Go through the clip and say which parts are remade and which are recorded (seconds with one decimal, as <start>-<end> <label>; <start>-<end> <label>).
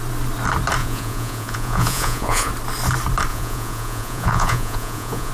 0.0-0.8 recorded; 0.8-2.5 remade; 2.5-3.3 recorded; 3.3-5.3 remade